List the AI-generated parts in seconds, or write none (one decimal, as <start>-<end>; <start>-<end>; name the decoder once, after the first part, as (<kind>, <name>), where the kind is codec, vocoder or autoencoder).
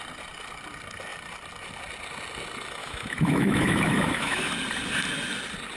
2.8-4.5 (autoencoder, DAC-VAE)